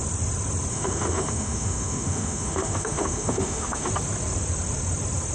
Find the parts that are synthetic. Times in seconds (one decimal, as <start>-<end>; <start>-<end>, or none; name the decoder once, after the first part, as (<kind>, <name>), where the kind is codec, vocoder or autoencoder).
0.7-3.9 (autoencoder, DAC-VAE)